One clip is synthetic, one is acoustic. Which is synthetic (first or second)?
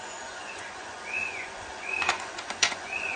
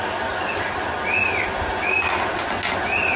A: first